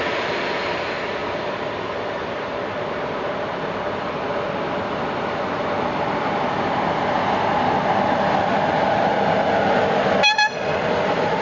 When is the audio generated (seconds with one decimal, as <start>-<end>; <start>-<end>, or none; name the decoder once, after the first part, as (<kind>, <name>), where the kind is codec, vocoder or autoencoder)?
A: none